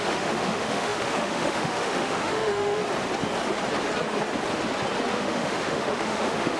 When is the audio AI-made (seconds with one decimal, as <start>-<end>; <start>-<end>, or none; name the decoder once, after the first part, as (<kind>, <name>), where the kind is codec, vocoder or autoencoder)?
0.0-2.8 (autoencoder, DAC-VAE); 5.1-6.6